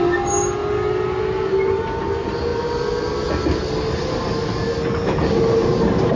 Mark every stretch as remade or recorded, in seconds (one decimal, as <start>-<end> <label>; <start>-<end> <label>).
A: 0.0-6.2 recorded